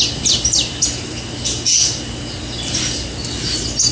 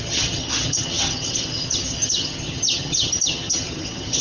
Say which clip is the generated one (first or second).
second